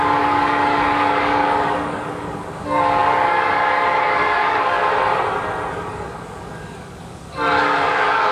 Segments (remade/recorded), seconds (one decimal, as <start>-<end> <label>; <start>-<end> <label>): 0.0-4.8 remade; 4.8-5.7 recorded; 5.7-8.3 remade